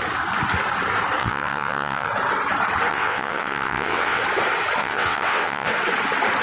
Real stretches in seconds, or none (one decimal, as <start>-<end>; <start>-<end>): 0.0-1.2; 2.1-2.9; 4.2-4.8; 5.7-6.4